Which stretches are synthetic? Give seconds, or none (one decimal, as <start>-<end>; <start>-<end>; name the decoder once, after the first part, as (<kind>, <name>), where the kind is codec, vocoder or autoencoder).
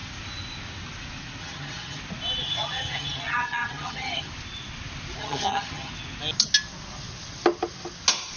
1.4-2.0 (vocoder, HiFi-GAN); 2.4-4.3; 5.2-5.9